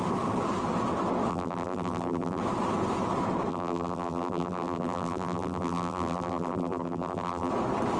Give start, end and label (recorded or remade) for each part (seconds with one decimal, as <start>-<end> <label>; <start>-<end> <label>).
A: 0.0-1.3 recorded; 1.3-2.4 remade; 2.4-3.5 recorded; 3.5-7.5 remade; 7.5-8.0 recorded